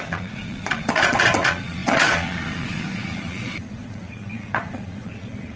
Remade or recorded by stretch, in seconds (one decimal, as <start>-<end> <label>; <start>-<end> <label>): 0.0-5.6 remade